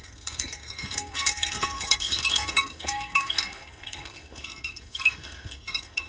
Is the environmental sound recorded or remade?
remade